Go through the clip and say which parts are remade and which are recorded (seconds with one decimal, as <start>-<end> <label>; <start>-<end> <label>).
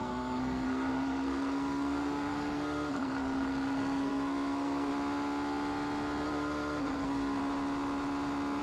0.0-4.9 remade; 4.9-6.3 recorded; 6.3-7.4 remade; 7.4-8.6 recorded